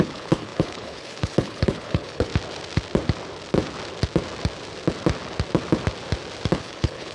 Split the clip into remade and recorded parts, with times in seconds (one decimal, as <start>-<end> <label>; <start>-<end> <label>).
0.0-2.3 remade; 2.3-6.6 recorded; 6.6-7.1 remade